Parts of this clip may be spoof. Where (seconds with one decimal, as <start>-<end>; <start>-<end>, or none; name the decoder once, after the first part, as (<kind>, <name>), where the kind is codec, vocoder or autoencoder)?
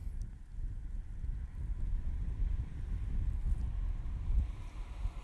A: 0.0-3.6 (vocoder, BigVGAN v2); 4.1-5.2